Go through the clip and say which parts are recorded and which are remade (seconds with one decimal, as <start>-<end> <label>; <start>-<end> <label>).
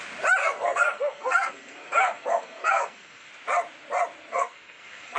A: 0.0-0.4 recorded; 0.4-3.3 remade; 3.3-4.3 recorded; 4.3-5.2 remade